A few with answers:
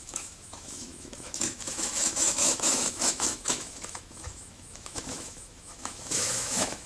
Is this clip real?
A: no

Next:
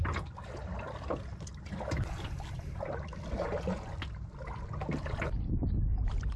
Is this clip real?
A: yes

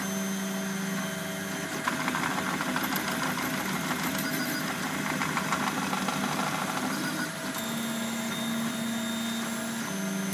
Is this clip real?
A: yes